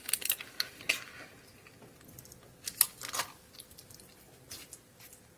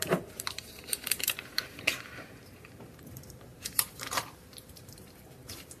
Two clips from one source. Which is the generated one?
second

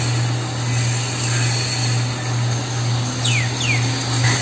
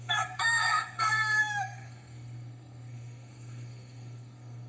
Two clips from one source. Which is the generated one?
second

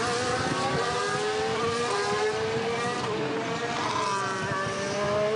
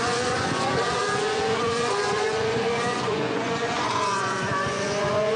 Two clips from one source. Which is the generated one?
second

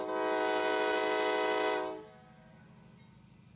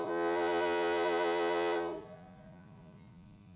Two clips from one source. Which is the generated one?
second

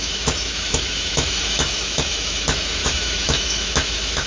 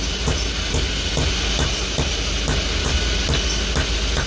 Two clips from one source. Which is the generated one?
first